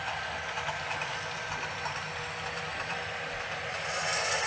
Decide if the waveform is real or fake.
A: real